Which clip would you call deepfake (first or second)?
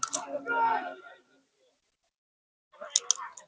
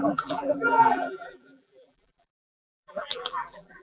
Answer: second